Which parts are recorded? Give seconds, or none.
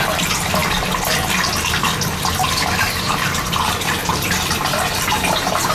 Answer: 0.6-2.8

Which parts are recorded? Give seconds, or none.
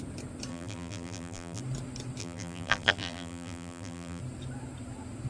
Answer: 0.0-0.5; 1.6-2.2; 4.2-5.3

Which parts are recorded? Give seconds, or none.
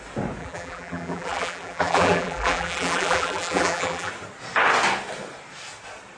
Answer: 0.0-0.4; 4.1-6.2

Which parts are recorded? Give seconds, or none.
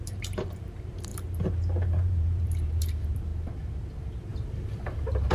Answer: none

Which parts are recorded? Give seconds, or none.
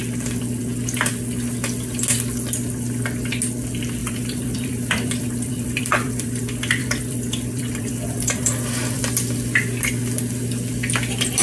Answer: 0.0-4.0; 9.0-11.4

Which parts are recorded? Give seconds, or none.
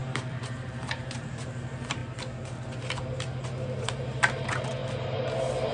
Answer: 2.0-3.8; 4.8-5.7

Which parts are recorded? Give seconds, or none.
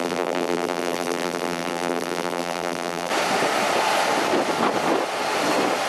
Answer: 3.1-5.9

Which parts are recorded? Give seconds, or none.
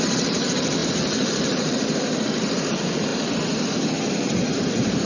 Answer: 3.1-4.1